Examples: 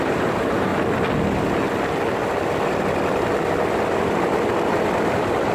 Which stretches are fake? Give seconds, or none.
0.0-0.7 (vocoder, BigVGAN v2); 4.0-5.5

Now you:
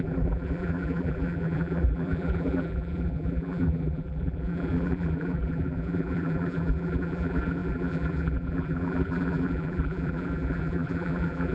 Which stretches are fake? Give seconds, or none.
0.0-11.5 (vocoder, BigVGAN v2)

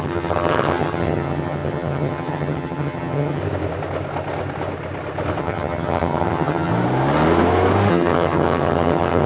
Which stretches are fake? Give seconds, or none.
0.0-3.4 (vocoder, HiFi-GAN); 5.4-6.7; 7.9-9.3

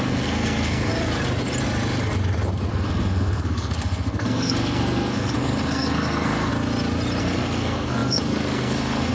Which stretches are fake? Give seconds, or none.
0.0-0.9 (codec, SNAC); 2.7-6.5; 7.2-9.1

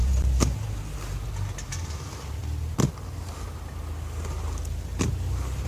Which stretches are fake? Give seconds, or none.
0.0-0.8 (vocoder, BigVGAN v2)